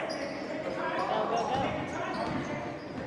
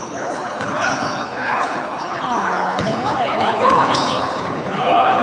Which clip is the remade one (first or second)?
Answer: second